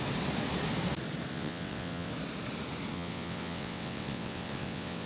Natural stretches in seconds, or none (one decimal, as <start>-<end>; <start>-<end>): 0.0-1.3; 2.1-2.9